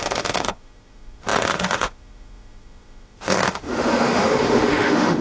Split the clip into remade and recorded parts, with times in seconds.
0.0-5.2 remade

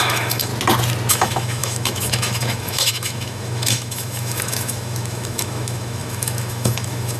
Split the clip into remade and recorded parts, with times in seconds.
0.0-0.5 remade; 0.5-1.1 recorded; 1.1-7.2 remade

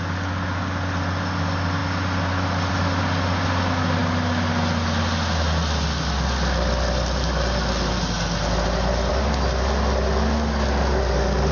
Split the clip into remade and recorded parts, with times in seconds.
0.0-11.5 recorded

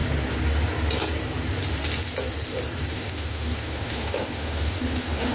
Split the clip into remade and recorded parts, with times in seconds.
0.0-2.9 recorded; 2.9-5.3 remade

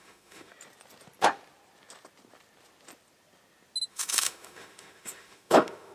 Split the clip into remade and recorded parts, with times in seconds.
0.0-0.5 remade; 0.5-3.9 recorded; 3.9-5.9 remade